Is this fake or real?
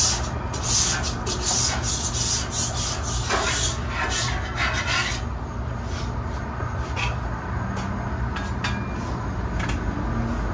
real